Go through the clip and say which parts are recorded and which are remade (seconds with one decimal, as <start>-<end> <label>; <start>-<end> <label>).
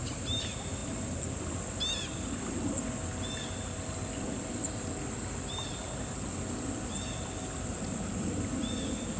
0.0-9.2 recorded